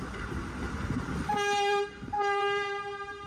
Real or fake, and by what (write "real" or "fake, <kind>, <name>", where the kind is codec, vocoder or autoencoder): fake, vocoder, BigVGAN v2